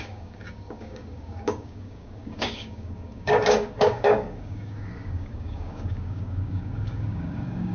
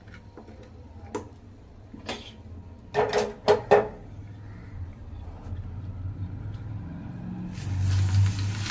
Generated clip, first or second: first